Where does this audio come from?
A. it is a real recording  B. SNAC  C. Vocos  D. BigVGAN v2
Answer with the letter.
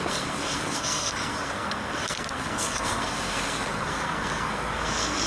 B